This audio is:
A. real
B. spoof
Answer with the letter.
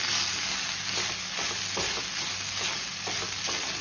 A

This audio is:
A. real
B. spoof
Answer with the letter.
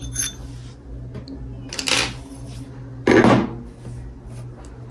A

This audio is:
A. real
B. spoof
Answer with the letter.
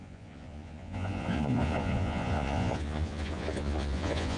B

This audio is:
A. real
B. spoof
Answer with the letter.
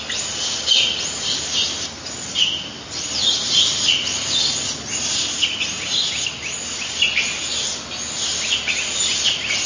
A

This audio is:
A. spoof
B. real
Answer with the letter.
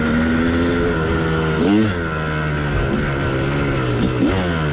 B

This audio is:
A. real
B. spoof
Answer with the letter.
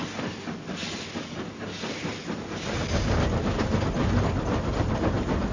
A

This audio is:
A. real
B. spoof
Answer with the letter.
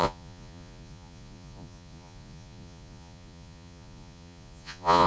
B